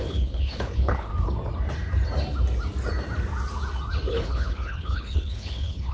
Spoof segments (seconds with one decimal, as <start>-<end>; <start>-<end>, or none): 0.0-1.1; 4.1-5.9